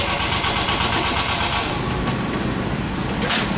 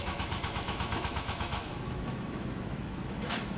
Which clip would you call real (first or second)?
first